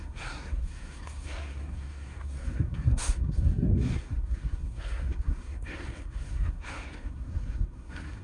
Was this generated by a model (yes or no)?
yes